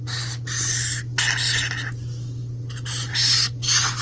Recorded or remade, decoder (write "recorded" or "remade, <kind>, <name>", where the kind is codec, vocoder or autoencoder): recorded